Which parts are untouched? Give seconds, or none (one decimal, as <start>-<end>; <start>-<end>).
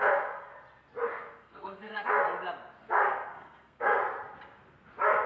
0.5-1.1; 2.2-2.8; 4.0-5.3